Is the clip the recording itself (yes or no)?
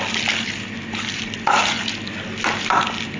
yes